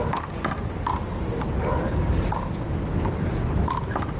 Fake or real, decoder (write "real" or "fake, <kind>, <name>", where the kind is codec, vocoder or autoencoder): real